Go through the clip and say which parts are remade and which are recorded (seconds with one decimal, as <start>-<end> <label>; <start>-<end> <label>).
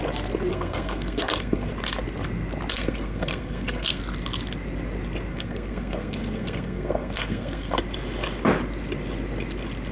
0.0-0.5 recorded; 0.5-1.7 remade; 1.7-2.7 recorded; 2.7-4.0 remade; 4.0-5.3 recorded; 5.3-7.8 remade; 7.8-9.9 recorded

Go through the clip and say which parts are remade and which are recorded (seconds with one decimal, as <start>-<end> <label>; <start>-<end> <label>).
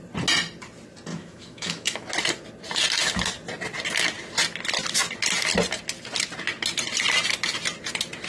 0.0-1.1 recorded; 1.1-2.1 remade; 2.1-8.3 recorded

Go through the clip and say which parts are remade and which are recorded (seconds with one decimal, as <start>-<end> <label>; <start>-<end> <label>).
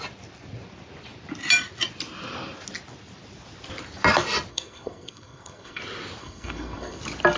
0.0-4.5 recorded; 4.5-5.8 remade; 5.8-6.2 recorded; 6.2-7.0 remade; 7.0-7.4 recorded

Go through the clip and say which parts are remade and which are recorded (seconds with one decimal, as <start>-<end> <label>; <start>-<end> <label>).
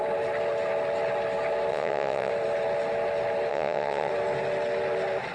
0.0-1.7 recorded; 1.7-2.3 remade; 2.3-3.5 recorded; 3.5-4.1 remade; 4.1-5.3 recorded